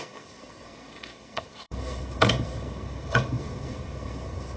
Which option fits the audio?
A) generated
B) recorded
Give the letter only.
A